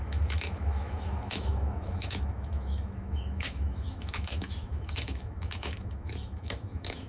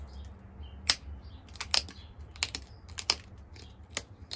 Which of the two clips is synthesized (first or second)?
first